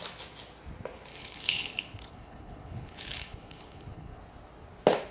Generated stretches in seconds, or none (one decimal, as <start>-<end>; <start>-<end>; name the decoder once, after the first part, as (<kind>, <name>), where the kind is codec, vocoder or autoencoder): 1.1-4.2 (codec, HILCodec)